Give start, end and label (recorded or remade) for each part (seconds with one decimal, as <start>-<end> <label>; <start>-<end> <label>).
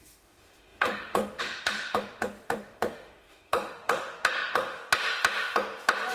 0.0-4.8 remade; 4.8-6.1 recorded